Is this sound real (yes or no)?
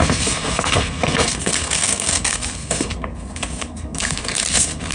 no